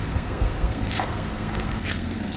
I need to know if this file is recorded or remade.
remade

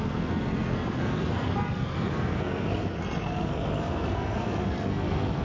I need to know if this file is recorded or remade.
remade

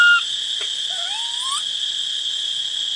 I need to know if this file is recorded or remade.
recorded